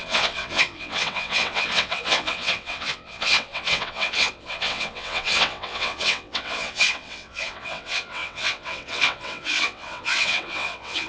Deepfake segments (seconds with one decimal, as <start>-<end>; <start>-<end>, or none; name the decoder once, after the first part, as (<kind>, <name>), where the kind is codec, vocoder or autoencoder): 0.0-11.1 (vocoder, WaveNeXt)